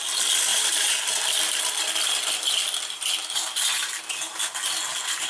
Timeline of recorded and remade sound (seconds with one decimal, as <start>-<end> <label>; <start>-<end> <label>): 0.0-0.5 recorded; 0.5-1.2 remade; 1.2-5.3 recorded